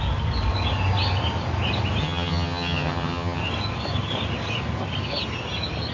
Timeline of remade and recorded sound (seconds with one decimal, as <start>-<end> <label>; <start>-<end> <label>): 0.0-2.0 recorded; 2.0-3.4 remade; 3.4-5.9 recorded